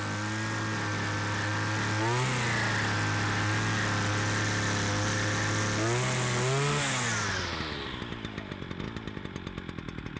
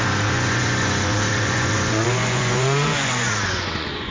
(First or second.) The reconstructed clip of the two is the second